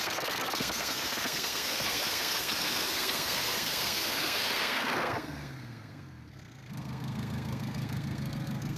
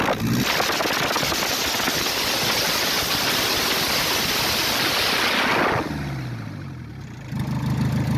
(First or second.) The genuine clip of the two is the second